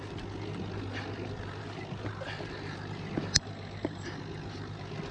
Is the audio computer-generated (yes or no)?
no